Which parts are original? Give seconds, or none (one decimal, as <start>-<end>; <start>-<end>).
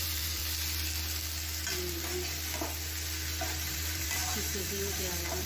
0.4-3.7